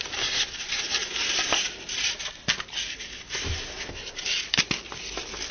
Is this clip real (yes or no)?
yes